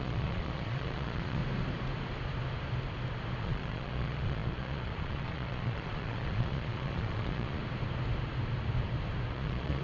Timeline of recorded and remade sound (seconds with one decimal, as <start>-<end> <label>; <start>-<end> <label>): 0.0-1.4 remade; 1.4-3.4 recorded; 3.4-7.6 remade; 7.6-9.3 recorded; 9.3-9.8 remade